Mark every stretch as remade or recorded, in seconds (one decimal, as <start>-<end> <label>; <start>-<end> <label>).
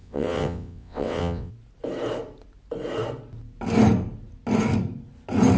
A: 0.0-1.5 remade; 1.5-5.6 recorded